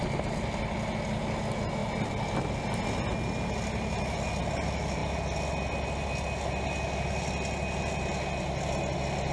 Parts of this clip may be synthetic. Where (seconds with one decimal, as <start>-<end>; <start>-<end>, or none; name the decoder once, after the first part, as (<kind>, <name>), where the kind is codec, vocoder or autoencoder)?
none